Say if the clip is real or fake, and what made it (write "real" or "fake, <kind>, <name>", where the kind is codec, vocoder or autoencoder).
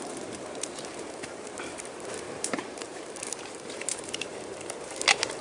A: fake, vocoder, BigVGAN v2